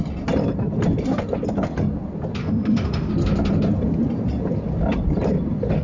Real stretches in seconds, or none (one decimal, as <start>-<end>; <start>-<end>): 0.0-2.4; 3.1-5.8